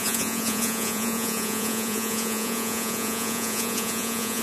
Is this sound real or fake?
fake